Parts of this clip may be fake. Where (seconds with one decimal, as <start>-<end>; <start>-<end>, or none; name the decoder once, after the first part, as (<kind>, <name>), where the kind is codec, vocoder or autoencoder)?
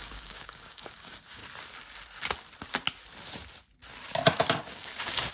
0.0-1.4 (codec, DAC); 4.6-5.3